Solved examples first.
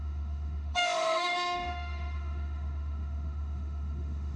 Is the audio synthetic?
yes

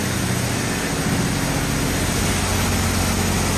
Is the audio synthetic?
no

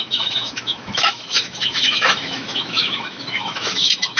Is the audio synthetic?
yes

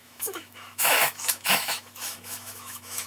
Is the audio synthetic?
yes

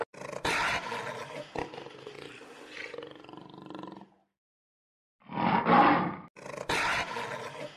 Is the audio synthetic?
no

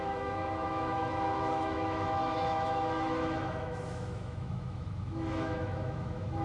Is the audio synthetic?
yes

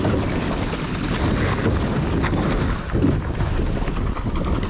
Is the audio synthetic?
no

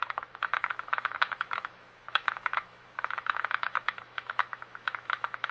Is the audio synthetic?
yes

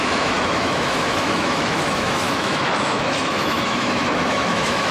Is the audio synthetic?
yes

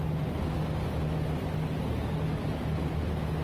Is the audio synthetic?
no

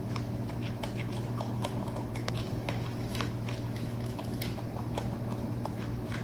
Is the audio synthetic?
yes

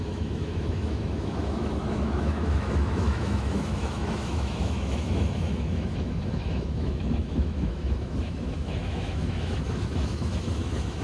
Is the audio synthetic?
yes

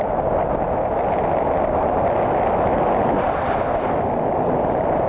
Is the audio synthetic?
no